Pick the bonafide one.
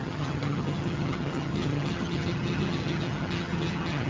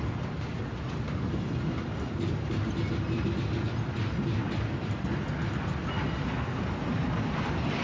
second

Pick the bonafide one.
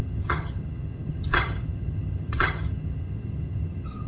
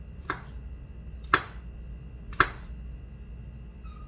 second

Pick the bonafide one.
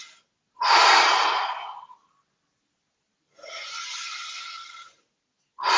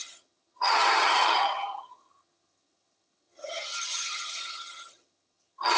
first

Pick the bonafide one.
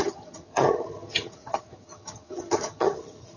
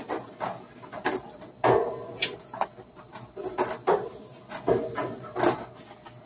second